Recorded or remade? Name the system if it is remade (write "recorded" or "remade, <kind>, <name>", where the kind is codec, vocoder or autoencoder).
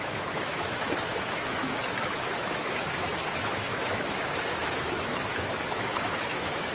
remade, autoencoder, DAC-VAE